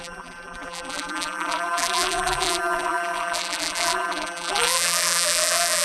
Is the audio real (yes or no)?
no